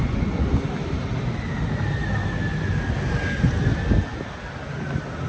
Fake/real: real